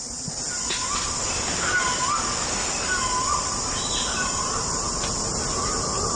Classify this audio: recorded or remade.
recorded